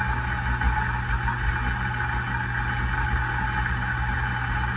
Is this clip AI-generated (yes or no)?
no